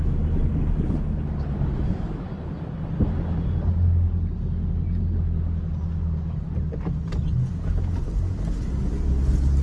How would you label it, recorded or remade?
recorded